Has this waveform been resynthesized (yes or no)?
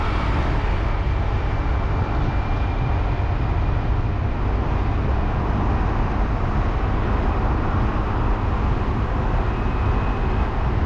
no